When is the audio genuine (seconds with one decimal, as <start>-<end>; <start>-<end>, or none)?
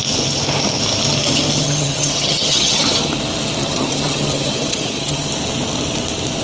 0.0-1.6; 3.1-3.6; 5.3-6.4